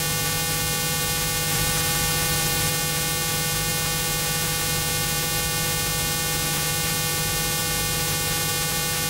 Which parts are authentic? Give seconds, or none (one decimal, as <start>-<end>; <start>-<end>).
0.0-1.5; 2.7-9.1